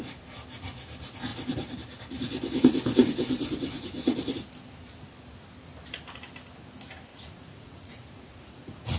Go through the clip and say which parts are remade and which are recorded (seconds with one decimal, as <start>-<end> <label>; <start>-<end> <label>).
0.0-7.1 recorded; 7.1-9.0 remade